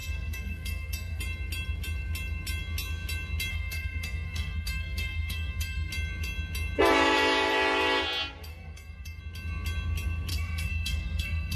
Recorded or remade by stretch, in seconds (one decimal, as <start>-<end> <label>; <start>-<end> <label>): 0.0-1.2 remade; 1.2-3.5 recorded; 3.5-5.9 remade; 5.9-8.5 recorded; 8.5-9.2 remade; 9.2-10.3 recorded; 10.3-11.6 remade